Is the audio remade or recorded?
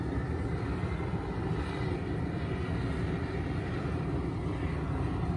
recorded